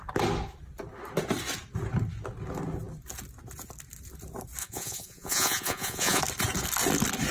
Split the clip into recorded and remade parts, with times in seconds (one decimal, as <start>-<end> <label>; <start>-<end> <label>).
0.0-4.6 recorded; 4.6-6.2 remade; 6.2-7.3 recorded